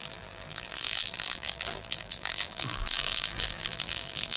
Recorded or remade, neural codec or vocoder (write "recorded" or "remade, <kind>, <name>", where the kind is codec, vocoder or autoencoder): remade, vocoder, BigVGAN v2